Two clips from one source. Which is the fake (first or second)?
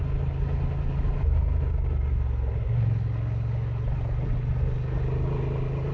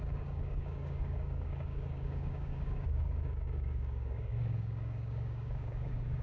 second